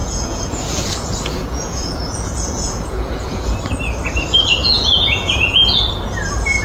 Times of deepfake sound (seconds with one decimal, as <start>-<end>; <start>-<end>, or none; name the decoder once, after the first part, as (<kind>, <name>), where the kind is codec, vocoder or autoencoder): 0.0-3.6 (vocoder, Vocos); 4.6-5.8